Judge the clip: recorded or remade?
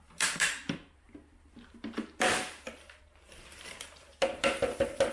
remade